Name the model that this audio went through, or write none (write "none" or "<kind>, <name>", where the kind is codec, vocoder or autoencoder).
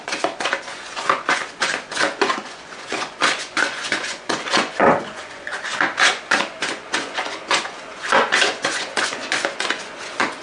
vocoder, Vocos